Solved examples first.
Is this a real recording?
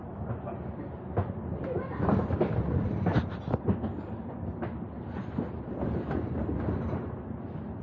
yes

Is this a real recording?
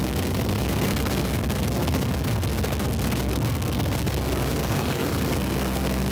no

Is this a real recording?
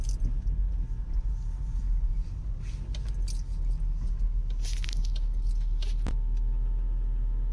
yes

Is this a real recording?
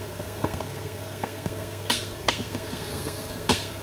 no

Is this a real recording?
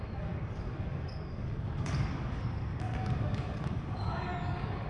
no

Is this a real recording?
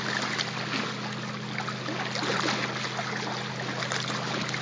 yes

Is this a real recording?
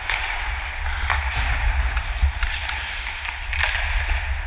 yes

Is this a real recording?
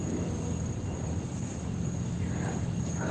yes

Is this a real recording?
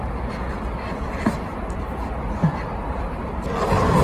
yes